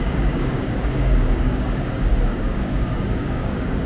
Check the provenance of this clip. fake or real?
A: fake